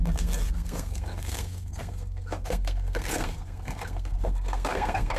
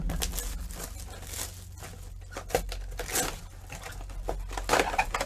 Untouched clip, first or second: second